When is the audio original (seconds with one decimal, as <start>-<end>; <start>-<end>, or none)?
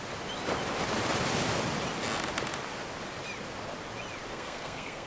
0.0-4.3